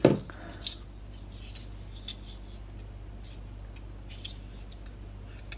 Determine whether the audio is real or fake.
real